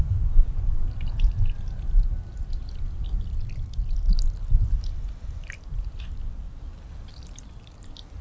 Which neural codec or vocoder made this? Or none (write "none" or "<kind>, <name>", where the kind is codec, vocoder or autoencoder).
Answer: none